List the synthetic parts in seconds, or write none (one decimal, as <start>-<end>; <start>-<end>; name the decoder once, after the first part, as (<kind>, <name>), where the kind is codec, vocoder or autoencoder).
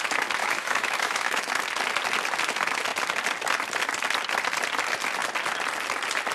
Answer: 0.4-1.5 (autoencoder, DAC-VAE)